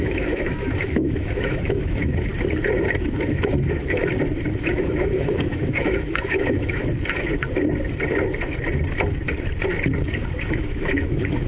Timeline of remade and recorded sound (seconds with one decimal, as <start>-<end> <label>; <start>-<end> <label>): 0.0-2.3 remade; 2.3-3.2 recorded; 3.2-4.0 remade; 4.0-4.6 recorded; 4.6-6.8 remade; 6.8-10.5 recorded; 10.5-11.5 remade